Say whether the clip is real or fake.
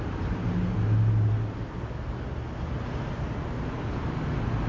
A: real